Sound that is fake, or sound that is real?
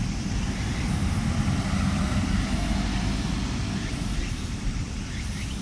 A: real